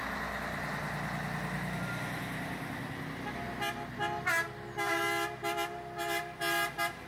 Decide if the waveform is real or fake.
real